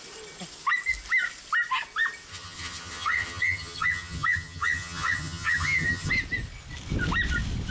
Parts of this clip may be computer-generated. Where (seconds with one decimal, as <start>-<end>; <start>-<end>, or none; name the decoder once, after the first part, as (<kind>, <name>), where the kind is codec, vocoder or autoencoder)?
2.3-6.1 (vocoder, HiFi-GAN)